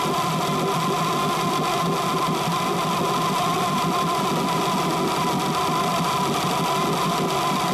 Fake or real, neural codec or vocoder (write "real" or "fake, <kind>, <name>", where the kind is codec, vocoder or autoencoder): real